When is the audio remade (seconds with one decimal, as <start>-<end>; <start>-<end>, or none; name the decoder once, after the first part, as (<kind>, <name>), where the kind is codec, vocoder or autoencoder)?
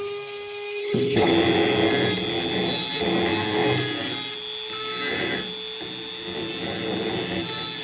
0.8-1.3 (codec, HILCodec)